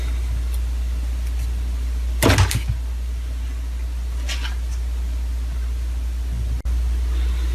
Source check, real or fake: real